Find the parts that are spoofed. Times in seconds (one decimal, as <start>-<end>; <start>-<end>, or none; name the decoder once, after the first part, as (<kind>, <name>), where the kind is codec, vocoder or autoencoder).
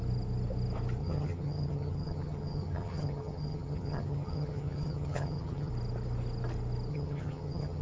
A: 1.0-5.7 (vocoder, HiFi-GAN); 6.9-7.8